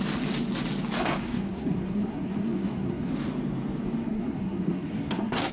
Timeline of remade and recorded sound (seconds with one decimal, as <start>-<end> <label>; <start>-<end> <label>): 0.0-1.2 recorded; 1.2-3.1 remade; 3.1-4.0 recorded; 4.0-5.5 remade